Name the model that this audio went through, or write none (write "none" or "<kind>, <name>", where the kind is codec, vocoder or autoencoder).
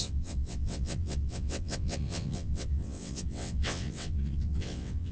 vocoder, WaveNeXt